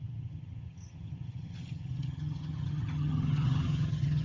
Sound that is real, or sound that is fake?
fake